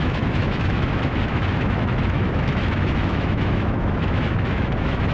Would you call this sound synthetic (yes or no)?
yes